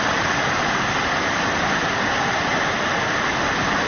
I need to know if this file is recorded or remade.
recorded